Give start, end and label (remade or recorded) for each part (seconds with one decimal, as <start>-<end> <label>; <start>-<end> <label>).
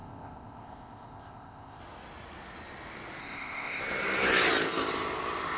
0.0-1.8 remade; 1.8-3.2 recorded; 3.2-3.8 remade; 3.8-5.6 recorded